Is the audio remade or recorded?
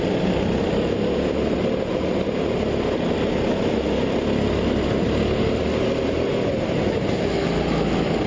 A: recorded